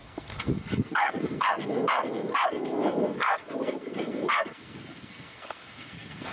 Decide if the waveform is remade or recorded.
remade